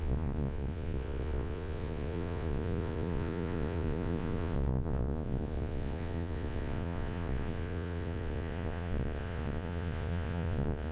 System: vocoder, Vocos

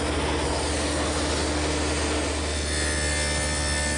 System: none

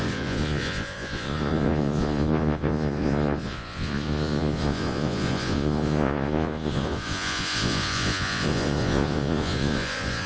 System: vocoder, Vocos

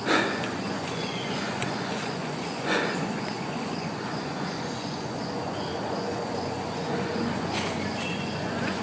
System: vocoder, Vocos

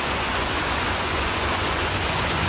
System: vocoder, Vocos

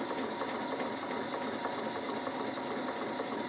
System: none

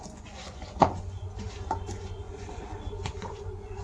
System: vocoder, Vocos